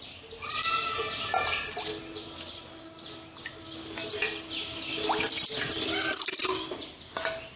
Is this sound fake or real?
real